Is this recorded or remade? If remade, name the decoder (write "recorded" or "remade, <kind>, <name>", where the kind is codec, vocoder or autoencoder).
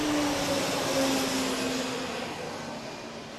recorded